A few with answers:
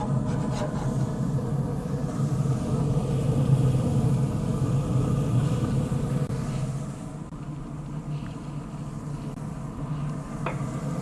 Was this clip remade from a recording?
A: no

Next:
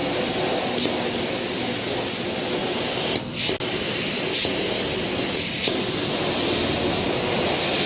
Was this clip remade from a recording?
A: no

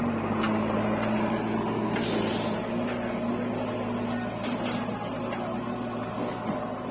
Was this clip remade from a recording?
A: no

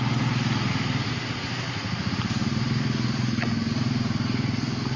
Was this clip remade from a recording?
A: no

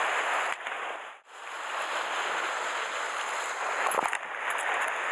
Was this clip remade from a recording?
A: no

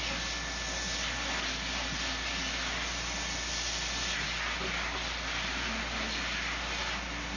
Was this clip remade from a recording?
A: no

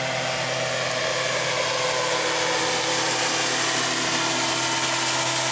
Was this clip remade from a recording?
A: no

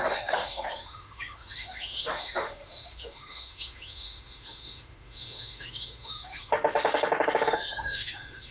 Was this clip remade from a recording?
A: yes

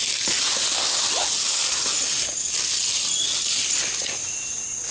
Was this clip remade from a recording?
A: no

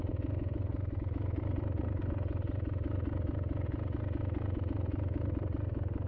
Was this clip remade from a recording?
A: no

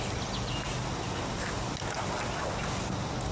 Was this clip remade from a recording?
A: no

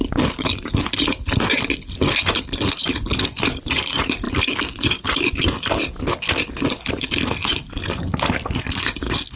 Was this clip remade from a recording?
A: no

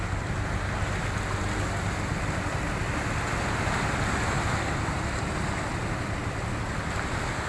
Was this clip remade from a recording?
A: no